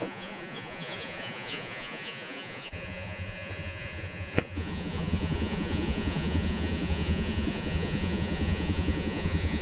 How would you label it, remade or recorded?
remade